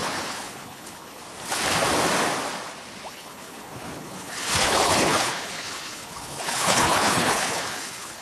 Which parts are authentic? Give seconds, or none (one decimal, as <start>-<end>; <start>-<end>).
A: 1.2-3.1